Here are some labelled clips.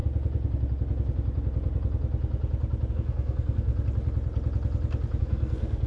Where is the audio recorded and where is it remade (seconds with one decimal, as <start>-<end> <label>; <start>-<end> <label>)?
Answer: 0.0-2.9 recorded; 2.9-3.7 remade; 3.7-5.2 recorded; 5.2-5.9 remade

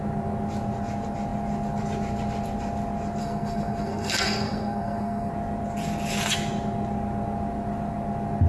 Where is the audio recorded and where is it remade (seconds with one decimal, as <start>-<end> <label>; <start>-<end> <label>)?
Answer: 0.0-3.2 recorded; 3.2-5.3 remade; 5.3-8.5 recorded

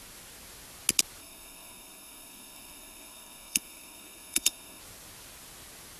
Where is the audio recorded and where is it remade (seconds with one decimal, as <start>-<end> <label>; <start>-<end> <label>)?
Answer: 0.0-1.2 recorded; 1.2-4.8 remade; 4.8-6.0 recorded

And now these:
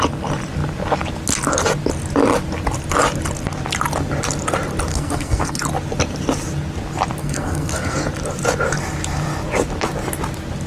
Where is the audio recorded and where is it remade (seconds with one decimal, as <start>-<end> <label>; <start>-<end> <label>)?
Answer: 0.0-4.9 recorded; 4.9-5.6 remade; 5.6-7.2 recorded; 7.2-8.1 remade; 8.1-10.7 recorded